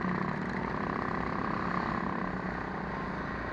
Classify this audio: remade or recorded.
recorded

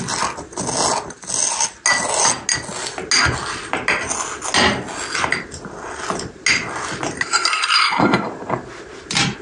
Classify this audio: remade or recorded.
recorded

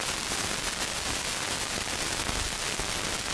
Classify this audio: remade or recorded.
recorded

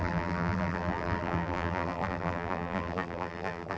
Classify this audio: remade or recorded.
remade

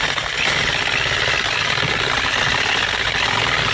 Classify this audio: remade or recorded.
recorded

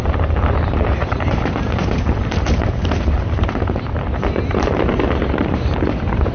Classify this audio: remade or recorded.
remade